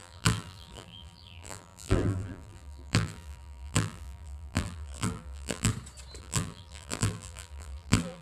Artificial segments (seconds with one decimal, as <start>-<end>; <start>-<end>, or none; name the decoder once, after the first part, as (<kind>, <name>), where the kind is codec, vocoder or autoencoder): 0.0-5.7 (vocoder, BigVGAN v2); 6.2-8.2